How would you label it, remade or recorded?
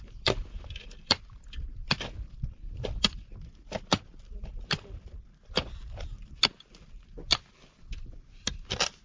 recorded